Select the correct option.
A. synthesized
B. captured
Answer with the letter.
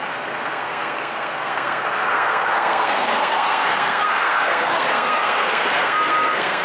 A